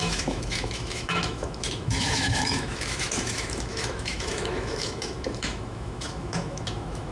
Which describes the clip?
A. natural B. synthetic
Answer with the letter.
B